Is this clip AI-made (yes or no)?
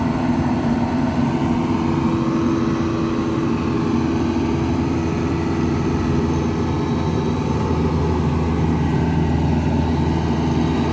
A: no